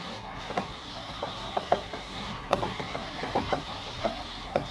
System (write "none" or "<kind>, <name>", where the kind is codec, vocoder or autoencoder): codec, SNAC